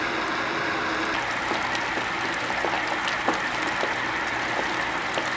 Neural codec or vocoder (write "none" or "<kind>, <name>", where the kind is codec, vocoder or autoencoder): none